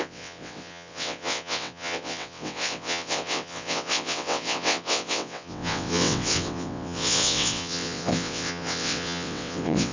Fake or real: fake